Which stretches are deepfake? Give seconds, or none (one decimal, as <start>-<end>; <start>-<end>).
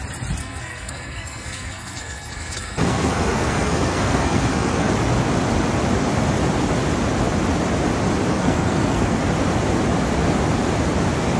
0.4-4.9; 8.3-9.2